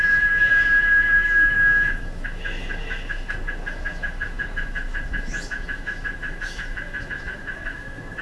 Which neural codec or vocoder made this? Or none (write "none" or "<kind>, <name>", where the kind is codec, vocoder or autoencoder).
autoencoder, DAC-VAE